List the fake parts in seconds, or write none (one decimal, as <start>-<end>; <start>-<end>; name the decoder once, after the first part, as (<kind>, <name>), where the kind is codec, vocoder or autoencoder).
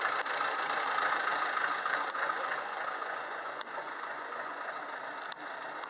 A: 1.3-4.8 (vocoder, Vocos)